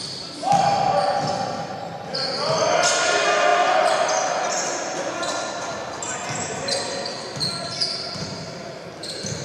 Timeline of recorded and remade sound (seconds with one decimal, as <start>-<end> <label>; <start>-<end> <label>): 0.0-9.4 recorded